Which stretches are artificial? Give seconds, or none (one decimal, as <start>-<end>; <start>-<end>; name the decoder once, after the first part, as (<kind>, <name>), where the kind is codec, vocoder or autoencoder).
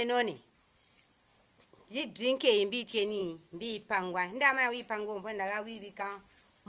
3.2-6.0 (autoencoder, DAC-VAE)